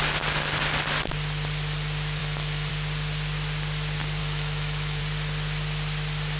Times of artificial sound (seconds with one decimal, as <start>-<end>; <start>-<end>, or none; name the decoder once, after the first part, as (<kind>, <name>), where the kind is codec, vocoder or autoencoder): 2.2-2.7 (autoencoder, DAC-VAE); 4.2-5.0